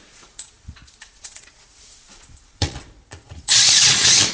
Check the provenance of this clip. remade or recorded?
remade